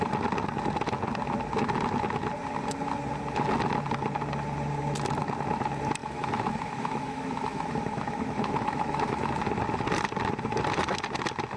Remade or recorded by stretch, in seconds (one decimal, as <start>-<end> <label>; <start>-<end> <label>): 0.0-6.0 recorded; 6.0-9.3 remade; 9.3-11.6 recorded